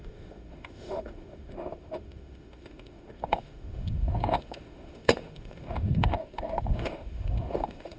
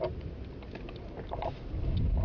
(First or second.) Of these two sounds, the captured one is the second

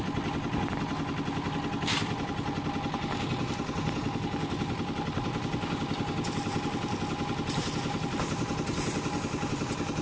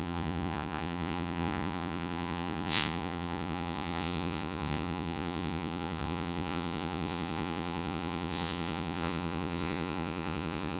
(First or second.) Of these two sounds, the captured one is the first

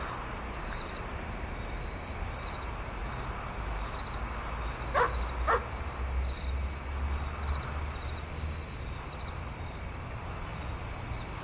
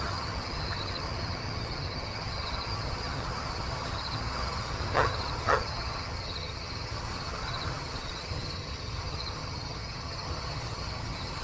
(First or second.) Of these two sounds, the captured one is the first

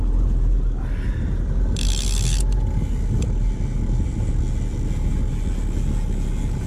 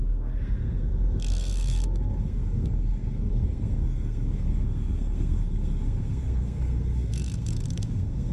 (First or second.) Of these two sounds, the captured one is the first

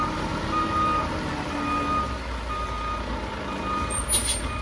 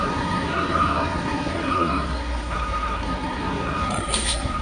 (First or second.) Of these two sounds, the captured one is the first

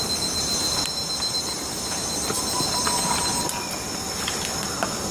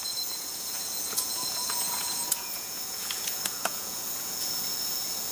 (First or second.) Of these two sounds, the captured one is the first